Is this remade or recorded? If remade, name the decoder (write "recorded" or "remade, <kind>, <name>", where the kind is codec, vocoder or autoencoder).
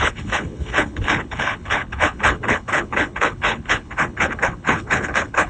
remade, codec, HILCodec